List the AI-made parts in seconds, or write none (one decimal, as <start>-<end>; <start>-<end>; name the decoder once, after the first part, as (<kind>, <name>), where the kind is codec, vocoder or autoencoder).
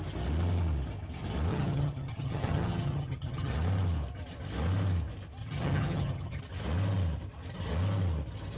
1.5-3.5 (vocoder, HiFi-GAN); 5.4-6.4